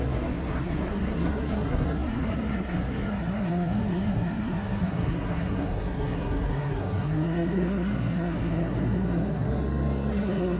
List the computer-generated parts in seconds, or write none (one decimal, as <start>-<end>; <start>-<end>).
0.0-10.6